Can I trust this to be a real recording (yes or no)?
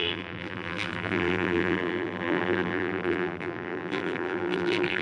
no